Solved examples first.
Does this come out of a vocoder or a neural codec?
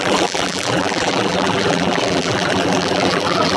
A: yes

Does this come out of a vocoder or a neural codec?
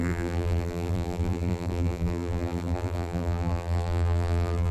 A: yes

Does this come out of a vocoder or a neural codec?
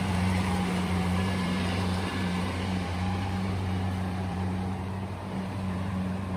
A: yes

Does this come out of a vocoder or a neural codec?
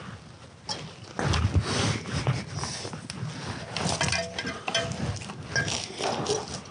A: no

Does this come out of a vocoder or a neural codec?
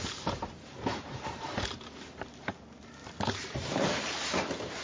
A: yes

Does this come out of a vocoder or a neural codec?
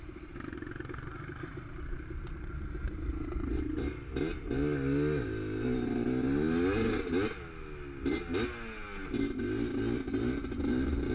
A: no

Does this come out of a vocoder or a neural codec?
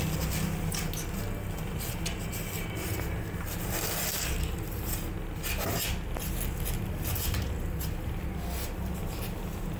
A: no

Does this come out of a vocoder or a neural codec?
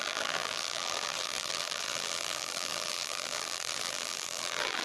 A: yes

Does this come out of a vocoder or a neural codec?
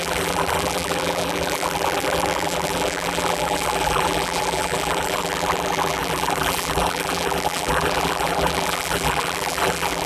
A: yes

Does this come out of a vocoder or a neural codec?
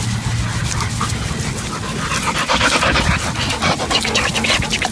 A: no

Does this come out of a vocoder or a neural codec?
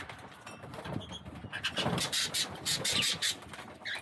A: yes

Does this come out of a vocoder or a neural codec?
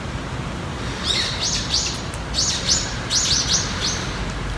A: no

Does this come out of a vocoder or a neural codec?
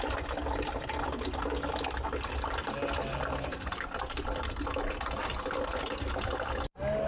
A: no